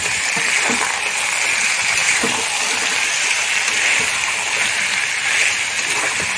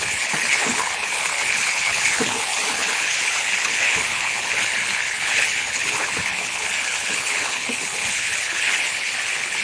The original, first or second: first